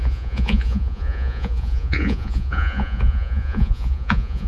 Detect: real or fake fake